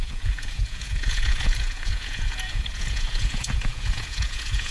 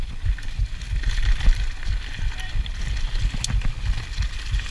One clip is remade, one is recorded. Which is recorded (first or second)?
second